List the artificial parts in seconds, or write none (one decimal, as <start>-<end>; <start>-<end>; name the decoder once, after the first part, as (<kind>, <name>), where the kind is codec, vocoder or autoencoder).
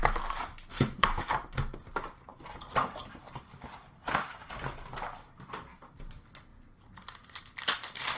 0.7-1.3 (autoencoder, DAC-VAE)